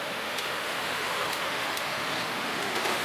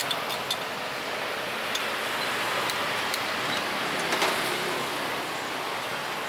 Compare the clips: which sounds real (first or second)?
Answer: second